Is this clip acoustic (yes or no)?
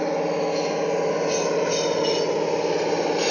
yes